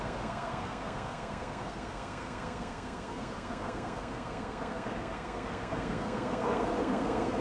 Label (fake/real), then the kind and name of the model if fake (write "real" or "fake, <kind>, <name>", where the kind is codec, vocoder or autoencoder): fake, codec, SNAC